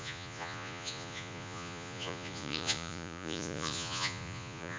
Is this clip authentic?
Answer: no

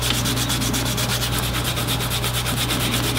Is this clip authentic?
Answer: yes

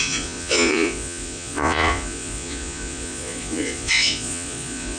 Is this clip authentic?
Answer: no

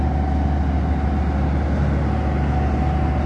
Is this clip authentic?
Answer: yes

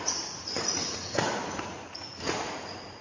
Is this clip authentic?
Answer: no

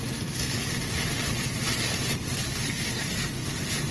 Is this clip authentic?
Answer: yes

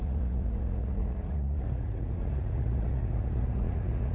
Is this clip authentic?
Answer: no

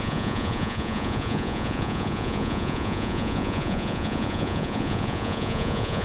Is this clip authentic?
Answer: no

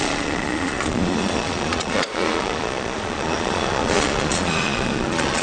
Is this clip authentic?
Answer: no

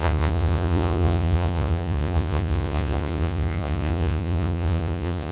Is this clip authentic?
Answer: no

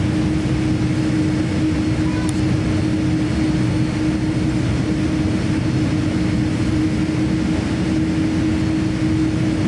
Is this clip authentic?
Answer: yes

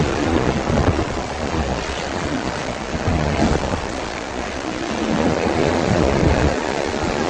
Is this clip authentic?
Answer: no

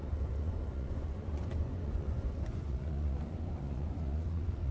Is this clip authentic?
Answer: no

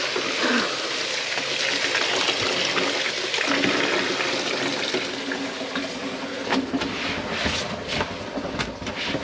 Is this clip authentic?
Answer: yes